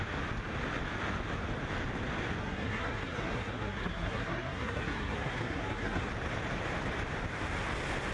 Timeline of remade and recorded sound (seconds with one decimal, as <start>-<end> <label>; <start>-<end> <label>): 0.0-2.4 recorded; 2.4-6.1 remade; 6.1-8.1 recorded